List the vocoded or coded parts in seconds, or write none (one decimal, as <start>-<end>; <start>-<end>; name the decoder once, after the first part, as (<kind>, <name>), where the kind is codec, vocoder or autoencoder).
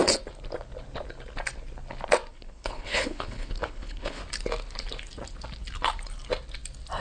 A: 2.3-4.2 (codec, HILCodec)